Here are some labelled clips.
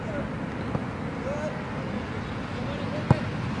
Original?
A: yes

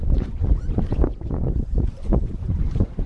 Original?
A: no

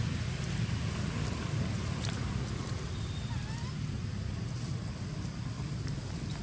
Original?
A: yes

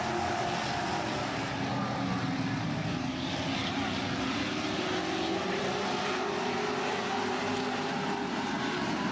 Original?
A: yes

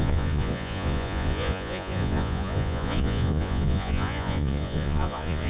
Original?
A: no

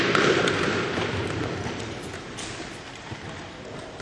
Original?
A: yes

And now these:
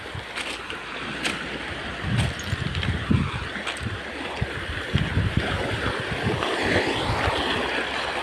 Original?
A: yes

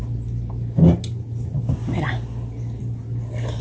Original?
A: yes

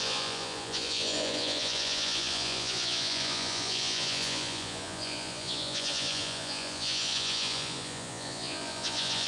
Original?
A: no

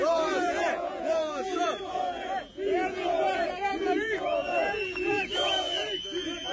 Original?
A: no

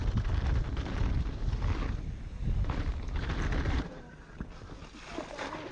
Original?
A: yes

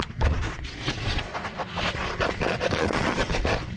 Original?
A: no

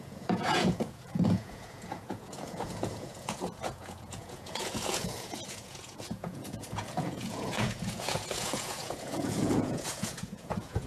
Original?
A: no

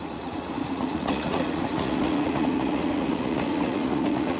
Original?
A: no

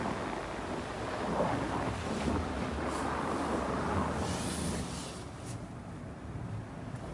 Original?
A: yes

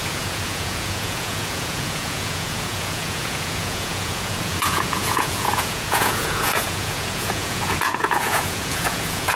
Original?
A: no